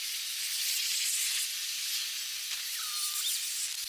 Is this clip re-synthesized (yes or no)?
no